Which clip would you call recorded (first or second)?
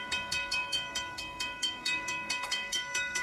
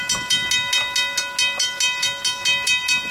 second